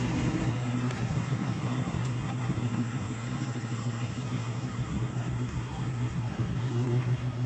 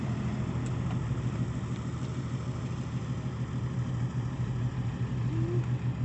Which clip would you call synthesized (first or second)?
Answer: first